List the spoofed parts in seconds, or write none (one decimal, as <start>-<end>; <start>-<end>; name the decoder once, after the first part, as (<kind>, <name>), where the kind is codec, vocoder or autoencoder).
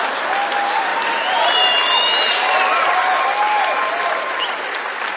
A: none